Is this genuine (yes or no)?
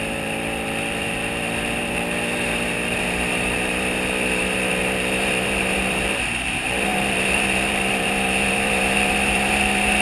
no